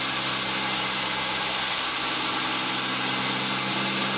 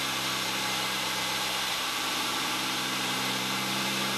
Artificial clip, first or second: second